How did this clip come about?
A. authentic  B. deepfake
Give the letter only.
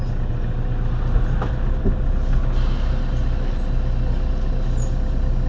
A